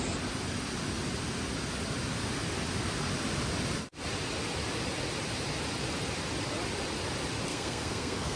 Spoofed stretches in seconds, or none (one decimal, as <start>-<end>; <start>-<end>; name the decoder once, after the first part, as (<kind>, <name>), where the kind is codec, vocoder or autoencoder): 7.5-8.4 (codec, SNAC)